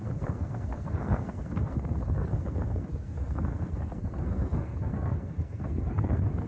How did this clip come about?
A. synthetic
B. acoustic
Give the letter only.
A